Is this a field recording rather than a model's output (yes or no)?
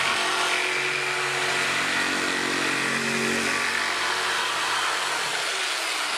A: yes